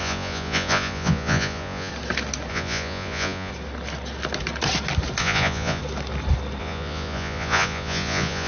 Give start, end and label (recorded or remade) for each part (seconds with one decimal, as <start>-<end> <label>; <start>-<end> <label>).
0.0-1.9 remade; 1.9-2.5 recorded; 2.5-3.5 remade; 3.5-5.2 recorded; 5.2-5.8 remade; 5.8-6.6 recorded; 6.6-8.5 remade